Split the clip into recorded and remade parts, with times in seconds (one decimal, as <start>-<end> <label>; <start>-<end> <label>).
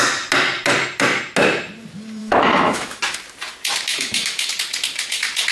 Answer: 0.0-2.2 recorded; 2.2-3.0 remade; 3.0-3.9 recorded; 3.9-4.5 remade; 4.5-5.5 recorded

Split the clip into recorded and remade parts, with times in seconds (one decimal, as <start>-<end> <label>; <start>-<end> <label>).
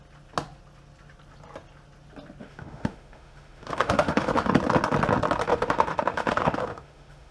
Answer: 0.0-2.4 recorded; 2.4-4.5 remade; 4.5-5.5 recorded; 5.5-7.3 remade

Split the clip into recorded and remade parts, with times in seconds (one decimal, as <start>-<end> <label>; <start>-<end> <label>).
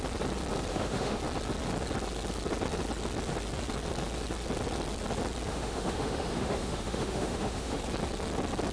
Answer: 0.0-0.7 recorded; 0.7-1.2 remade; 1.2-5.5 recorded; 5.5-7.8 remade; 7.8-8.7 recorded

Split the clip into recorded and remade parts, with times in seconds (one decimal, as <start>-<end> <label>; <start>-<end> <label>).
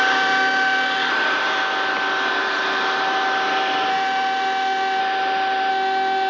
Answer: 0.0-1.1 remade; 1.1-3.9 recorded; 3.9-5.0 remade; 5.0-5.7 recorded; 5.7-6.3 remade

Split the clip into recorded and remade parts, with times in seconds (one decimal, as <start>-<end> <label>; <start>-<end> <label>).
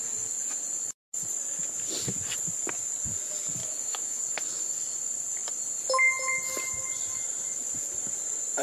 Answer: 0.0-3.6 recorded; 3.6-4.2 remade; 4.2-8.6 recorded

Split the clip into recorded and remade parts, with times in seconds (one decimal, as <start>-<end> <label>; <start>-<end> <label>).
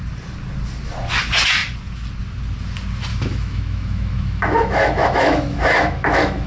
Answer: 0.0-3.1 recorded; 3.1-6.5 remade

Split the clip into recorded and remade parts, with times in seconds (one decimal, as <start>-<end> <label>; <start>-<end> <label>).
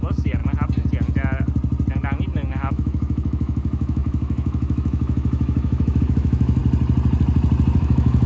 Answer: 0.0-0.4 remade; 0.4-2.5 recorded; 2.5-6.6 remade; 6.6-7.8 recorded; 7.8-8.3 remade